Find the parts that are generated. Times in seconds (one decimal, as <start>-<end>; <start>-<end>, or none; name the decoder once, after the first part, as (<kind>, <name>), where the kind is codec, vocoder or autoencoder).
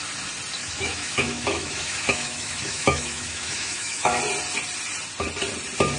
0.6-4.2 (autoencoder, DAC-VAE)